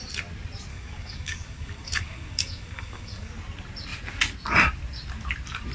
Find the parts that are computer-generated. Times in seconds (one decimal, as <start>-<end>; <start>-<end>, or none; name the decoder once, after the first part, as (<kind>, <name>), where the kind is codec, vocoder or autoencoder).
0.7-3.3 (codec, DAC)